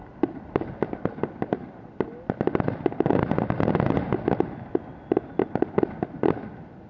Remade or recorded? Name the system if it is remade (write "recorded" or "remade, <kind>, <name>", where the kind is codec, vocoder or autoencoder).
recorded